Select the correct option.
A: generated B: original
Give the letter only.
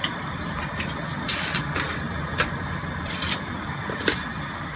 B